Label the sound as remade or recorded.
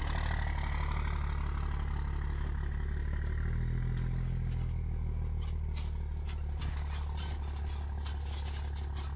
recorded